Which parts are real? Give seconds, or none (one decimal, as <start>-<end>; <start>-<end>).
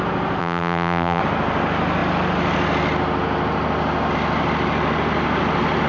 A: 0.0-0.4; 1.2-5.9